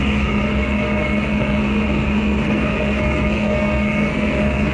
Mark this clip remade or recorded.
remade